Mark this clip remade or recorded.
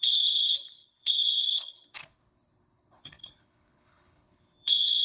remade